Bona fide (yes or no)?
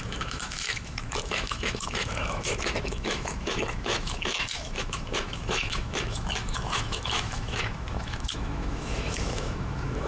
no